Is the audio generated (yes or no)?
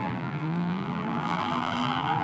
yes